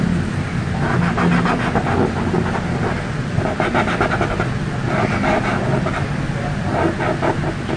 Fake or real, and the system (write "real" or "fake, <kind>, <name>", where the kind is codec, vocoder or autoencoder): real